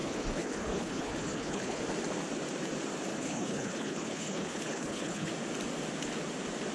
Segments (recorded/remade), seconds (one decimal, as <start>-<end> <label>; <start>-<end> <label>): 0.0-1.8 remade; 1.8-3.1 recorded; 3.1-5.3 remade; 5.3-6.7 recorded